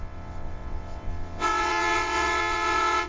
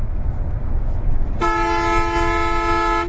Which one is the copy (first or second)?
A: first